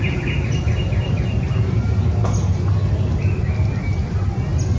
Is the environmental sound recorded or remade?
recorded